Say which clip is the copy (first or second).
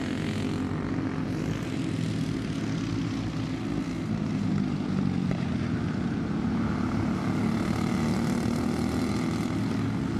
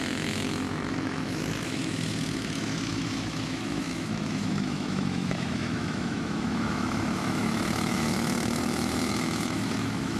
second